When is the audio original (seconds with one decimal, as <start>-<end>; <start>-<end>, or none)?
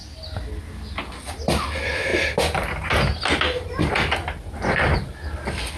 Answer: 0.0-5.8